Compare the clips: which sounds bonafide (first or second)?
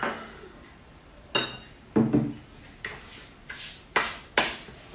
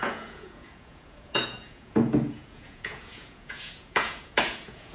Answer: first